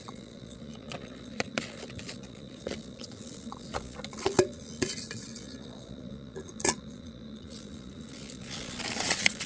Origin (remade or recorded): remade